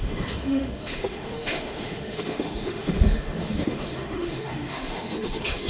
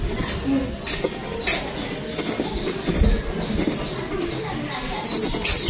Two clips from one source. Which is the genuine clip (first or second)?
second